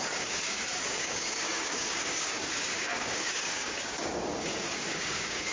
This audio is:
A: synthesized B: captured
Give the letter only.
A